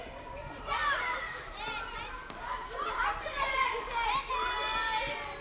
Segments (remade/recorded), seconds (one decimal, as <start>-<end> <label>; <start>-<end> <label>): 0.0-5.4 recorded

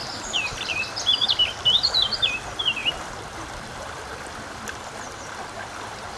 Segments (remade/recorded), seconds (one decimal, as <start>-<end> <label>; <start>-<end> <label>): 0.0-1.9 remade; 1.9-2.8 recorded; 2.8-6.2 remade

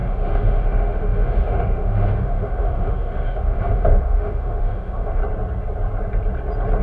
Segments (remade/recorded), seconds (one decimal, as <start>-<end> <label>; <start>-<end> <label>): 0.0-5.2 remade; 5.2-6.8 recorded

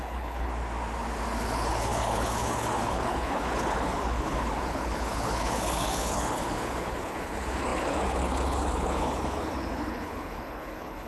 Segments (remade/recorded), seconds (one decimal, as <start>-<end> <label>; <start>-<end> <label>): 0.0-0.5 remade; 0.5-1.4 recorded; 1.4-11.1 remade

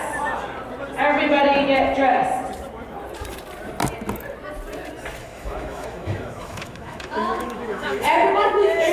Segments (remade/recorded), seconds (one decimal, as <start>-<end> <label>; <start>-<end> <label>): 0.0-5.2 recorded; 5.2-8.9 remade

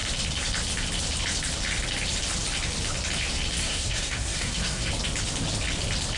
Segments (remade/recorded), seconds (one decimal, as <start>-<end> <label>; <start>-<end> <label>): 0.0-3.6 recorded; 3.6-4.9 remade; 4.9-6.2 recorded

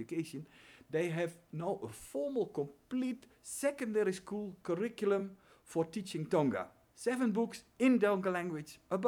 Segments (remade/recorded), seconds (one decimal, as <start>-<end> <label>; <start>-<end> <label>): 0.0-1.9 recorded; 1.9-4.6 remade; 4.6-9.1 recorded

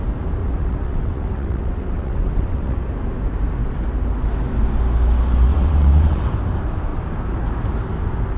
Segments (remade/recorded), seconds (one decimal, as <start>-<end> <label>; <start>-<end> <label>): 0.0-0.4 recorded; 0.4-2.8 remade; 2.8-5.5 recorded; 5.5-6.3 remade; 6.3-8.4 recorded